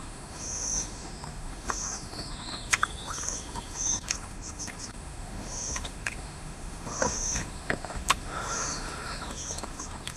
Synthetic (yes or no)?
yes